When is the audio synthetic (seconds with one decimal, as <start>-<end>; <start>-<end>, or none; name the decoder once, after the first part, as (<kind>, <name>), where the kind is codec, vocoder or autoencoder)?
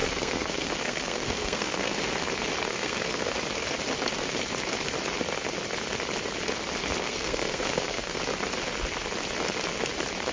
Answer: 0.0-2.0 (codec, SNAC); 2.7-3.3; 7.0-8.2